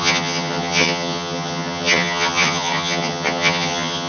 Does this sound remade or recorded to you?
remade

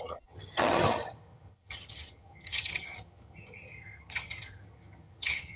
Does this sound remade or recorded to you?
remade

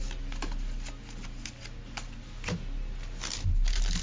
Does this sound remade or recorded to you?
recorded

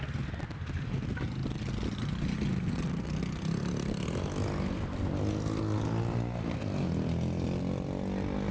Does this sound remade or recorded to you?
recorded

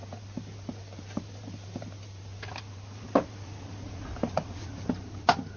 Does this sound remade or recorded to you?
recorded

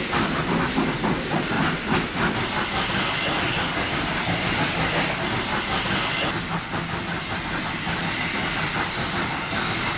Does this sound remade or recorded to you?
recorded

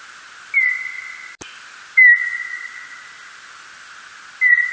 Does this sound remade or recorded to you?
recorded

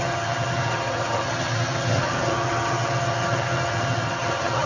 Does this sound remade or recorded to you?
remade